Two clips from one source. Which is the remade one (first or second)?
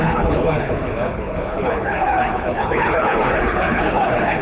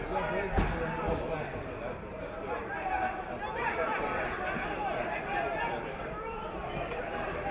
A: first